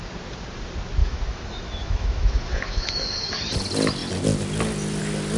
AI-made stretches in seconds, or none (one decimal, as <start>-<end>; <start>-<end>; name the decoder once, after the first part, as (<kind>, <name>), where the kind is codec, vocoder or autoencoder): 1.0-3.4 (autoencoder, DAC-VAE)